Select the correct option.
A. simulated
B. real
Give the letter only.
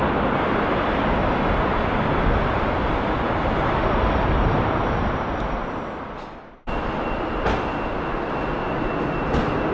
B